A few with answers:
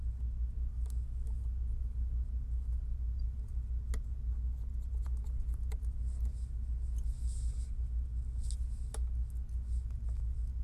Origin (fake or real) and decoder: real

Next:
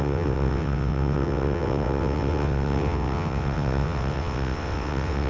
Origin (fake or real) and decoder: fake, vocoder, WaveNeXt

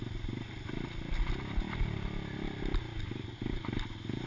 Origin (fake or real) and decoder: real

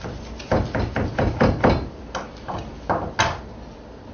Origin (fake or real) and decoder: real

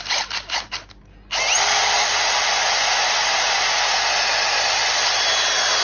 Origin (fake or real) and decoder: real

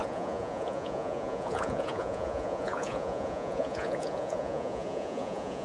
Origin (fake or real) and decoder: fake, vocoder, Vocos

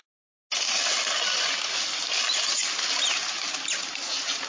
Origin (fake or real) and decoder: real